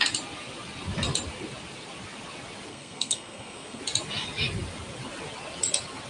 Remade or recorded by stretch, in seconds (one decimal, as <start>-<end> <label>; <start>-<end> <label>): 0.0-2.7 recorded; 2.7-3.8 remade; 3.8-6.1 recorded